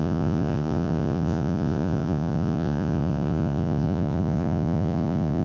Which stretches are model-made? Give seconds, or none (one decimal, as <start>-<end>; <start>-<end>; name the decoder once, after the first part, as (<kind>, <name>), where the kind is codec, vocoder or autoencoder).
0.0-5.4 (vocoder, Vocos)